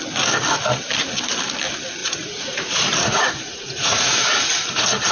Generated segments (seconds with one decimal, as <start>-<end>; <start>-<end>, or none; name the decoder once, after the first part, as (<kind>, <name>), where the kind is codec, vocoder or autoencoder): 2.0-5.1 (vocoder, Vocos)